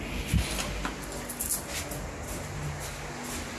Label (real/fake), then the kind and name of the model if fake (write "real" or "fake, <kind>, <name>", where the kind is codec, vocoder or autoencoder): real